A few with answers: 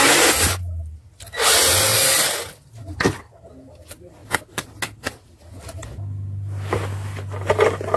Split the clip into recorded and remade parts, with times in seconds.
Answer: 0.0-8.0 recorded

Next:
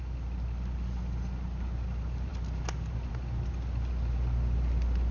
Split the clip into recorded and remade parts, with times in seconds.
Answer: 0.0-5.1 recorded

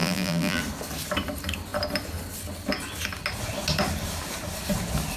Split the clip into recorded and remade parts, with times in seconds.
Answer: 0.0-0.6 remade; 0.6-5.2 recorded